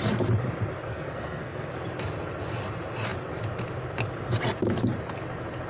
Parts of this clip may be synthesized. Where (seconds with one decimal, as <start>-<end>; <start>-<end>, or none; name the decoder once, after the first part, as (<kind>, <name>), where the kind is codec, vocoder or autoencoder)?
0.9-1.7 (codec, SNAC)